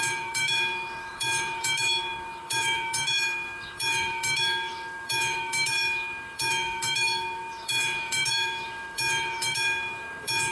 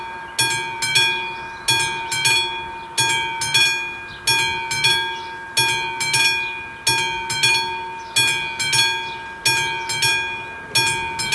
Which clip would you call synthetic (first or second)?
first